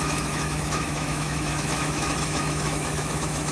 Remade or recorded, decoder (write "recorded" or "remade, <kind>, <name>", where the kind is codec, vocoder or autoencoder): remade, autoencoder, DAC-VAE